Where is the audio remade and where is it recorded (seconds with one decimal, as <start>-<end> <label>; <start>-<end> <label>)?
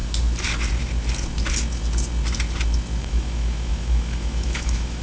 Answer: 0.0-3.0 recorded; 3.0-5.0 remade